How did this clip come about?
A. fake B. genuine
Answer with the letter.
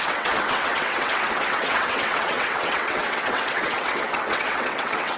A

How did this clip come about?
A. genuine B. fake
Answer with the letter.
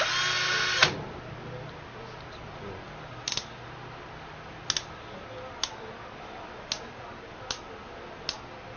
A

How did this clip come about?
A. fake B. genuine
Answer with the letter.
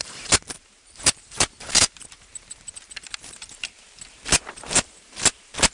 A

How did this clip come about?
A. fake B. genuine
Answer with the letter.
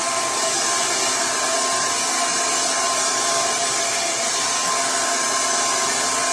B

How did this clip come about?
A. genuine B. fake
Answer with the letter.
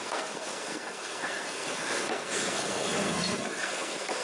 B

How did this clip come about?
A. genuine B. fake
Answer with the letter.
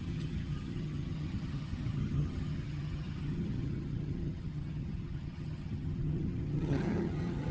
B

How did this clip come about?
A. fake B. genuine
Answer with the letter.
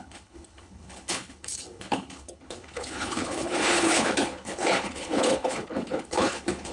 A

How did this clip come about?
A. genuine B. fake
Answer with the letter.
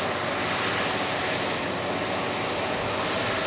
A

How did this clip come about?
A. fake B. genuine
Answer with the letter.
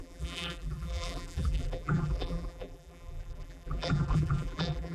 A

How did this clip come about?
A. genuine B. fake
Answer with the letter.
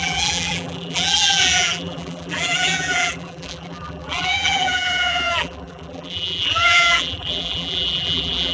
B